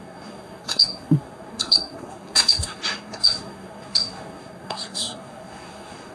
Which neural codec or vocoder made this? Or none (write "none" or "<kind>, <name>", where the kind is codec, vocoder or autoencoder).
codec, SNAC